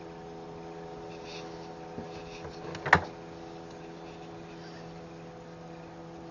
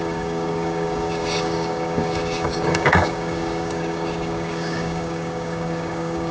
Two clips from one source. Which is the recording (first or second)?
first